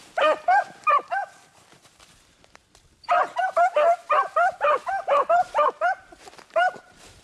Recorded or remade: remade